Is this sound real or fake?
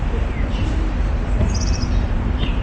fake